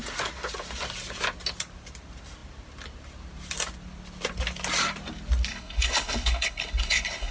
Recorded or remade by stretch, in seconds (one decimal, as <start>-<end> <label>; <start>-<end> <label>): 0.0-5.5 recorded; 5.5-7.3 remade